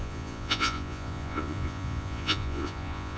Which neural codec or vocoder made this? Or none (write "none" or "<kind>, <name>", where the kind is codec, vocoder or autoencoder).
vocoder, Vocos